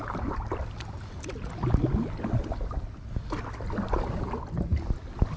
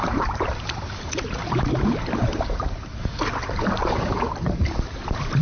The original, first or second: first